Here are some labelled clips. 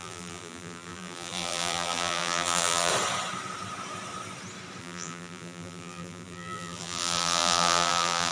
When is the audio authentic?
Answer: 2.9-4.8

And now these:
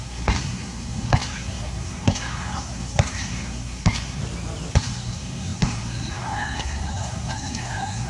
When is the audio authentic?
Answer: 4.2-4.7

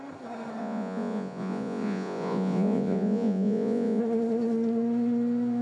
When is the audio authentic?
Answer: 0.0-0.6; 4.0-5.6

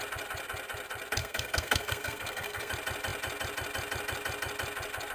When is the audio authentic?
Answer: 0.0-1.2; 2.7-5.1